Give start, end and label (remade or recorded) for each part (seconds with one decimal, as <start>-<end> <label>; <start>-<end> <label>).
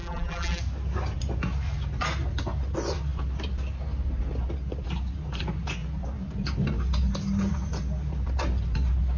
0.0-0.6 remade; 0.6-9.2 recorded